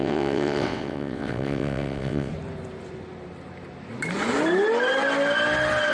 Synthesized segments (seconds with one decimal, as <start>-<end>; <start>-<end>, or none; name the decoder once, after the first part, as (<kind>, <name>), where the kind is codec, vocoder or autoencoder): 0.0-2.3 (vocoder, WaveNeXt)